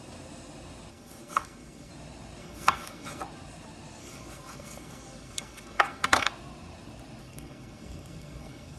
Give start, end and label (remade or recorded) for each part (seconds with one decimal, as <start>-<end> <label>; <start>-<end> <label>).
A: 0.0-0.9 recorded; 0.9-1.9 remade; 1.9-2.4 recorded; 2.4-3.2 remade; 3.2-4.0 recorded; 4.0-6.3 remade; 6.3-7.2 recorded; 7.2-8.8 remade